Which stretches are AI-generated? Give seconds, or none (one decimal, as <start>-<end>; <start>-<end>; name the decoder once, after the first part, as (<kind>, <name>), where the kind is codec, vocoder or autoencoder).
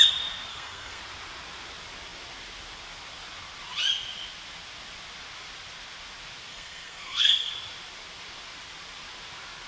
0.5-1.0 (codec, SNAC); 6.5-7.5